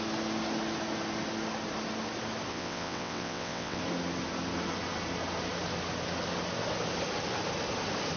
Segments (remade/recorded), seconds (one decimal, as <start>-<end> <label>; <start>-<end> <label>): 0.0-2.5 recorded; 2.5-3.8 remade; 3.8-8.2 recorded